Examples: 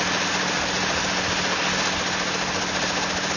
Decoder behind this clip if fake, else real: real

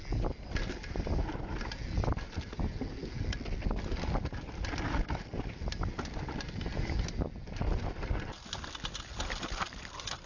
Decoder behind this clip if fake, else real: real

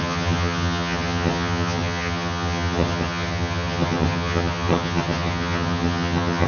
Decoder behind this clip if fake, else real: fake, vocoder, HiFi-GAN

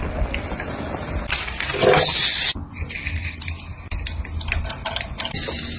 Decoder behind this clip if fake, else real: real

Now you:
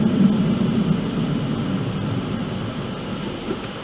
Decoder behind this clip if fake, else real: real